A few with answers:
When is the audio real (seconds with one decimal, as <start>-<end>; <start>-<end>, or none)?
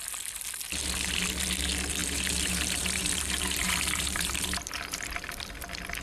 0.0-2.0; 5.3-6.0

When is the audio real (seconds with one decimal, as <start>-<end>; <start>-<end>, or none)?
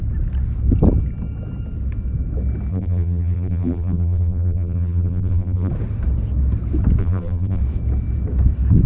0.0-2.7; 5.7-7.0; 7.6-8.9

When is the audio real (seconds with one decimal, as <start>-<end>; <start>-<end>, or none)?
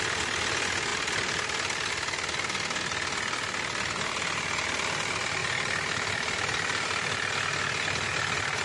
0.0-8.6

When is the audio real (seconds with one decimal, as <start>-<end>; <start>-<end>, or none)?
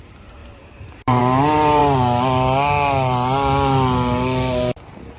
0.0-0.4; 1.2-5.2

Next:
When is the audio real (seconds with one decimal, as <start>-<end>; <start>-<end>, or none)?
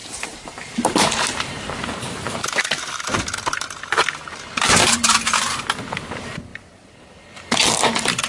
3.2-4.8; 5.6-8.3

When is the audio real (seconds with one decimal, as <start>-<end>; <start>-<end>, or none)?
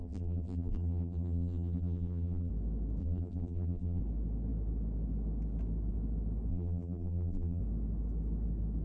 2.5-3.0; 4.0-6.5; 7.6-8.8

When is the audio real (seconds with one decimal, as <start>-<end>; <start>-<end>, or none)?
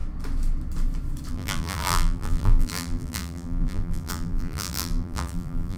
0.0-1.3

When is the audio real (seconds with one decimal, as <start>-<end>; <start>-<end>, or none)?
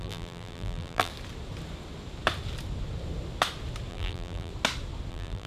1.1-3.9; 4.5-5.1